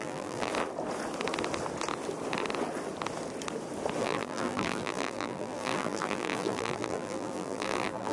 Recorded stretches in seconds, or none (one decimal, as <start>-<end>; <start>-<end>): 0.5-4.0